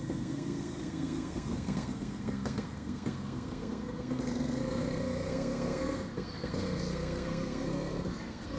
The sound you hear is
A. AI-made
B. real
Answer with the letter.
A